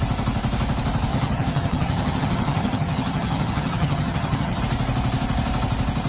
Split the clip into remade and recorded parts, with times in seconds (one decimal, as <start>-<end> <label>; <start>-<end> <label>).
0.0-1.1 recorded; 1.1-4.6 remade; 4.6-6.1 recorded